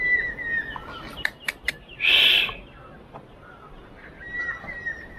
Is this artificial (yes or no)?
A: no